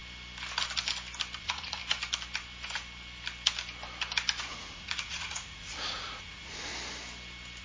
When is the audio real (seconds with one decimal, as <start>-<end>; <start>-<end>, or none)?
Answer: 0.0-1.4; 1.8-4.5; 6.7-7.6

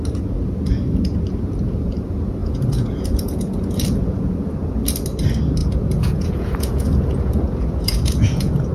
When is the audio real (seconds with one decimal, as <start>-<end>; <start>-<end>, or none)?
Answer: 0.0-2.4; 4.5-5.6

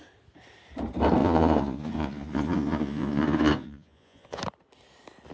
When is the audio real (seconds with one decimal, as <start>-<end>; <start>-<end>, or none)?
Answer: 0.0-1.2; 4.4-5.3

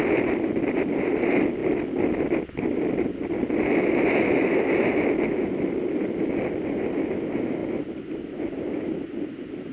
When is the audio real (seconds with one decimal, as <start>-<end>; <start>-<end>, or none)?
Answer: 0.0-9.7

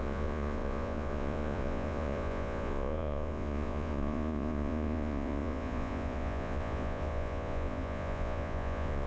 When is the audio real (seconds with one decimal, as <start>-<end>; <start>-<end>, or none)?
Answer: none